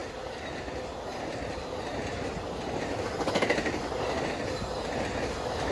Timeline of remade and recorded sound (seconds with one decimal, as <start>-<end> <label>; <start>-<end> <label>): 0.0-5.7 recorded